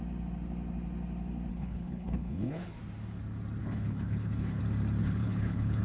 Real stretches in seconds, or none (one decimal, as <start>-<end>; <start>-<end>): 0.0-1.5; 2.8-3.6; 4.6-5.0